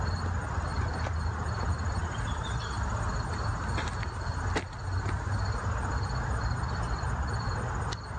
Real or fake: real